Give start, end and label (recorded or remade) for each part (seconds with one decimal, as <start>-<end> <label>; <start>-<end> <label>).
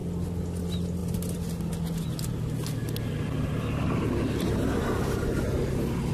0.0-6.1 recorded